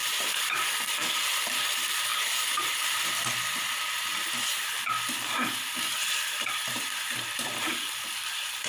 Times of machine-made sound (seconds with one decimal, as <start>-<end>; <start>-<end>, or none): 0.0-2.1; 2.9-4.1; 7.6-8.7